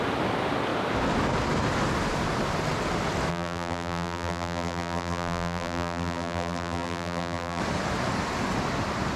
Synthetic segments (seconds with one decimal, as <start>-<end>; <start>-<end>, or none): 3.3-7.6